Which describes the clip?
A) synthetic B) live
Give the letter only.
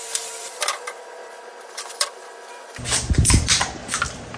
A